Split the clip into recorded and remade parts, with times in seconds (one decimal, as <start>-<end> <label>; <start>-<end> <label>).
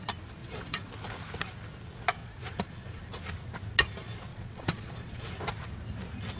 0.0-0.4 recorded; 0.4-0.9 remade; 0.9-2.2 recorded; 2.2-3.0 remade; 3.0-4.3 recorded; 4.3-5.3 remade; 5.3-6.4 recorded